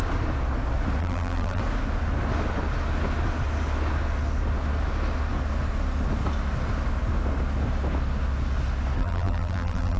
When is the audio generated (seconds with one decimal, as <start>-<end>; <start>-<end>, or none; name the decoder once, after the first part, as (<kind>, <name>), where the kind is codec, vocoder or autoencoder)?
1.0-1.6 (vocoder, BigVGAN v2); 9.0-10.0